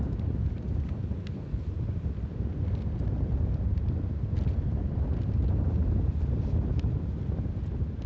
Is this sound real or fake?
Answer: real